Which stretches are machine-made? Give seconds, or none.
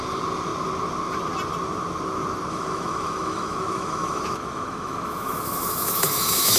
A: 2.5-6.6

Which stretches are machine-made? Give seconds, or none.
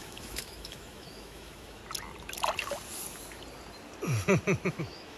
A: 0.0-1.8; 4.7-5.2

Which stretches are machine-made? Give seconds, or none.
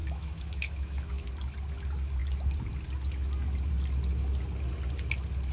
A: 0.0-1.3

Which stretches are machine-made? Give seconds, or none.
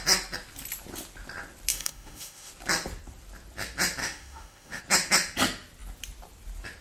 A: 1.7-2.5; 4.0-4.8